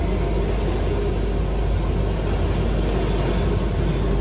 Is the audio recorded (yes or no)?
yes